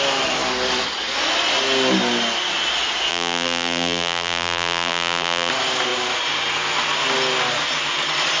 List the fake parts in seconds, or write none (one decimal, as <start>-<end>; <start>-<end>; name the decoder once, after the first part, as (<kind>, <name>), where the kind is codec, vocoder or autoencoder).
3.1-5.5 (vocoder, BigVGAN v2)